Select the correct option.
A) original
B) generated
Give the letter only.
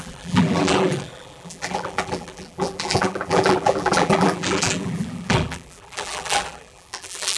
B